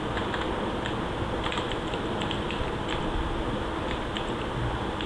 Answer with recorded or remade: recorded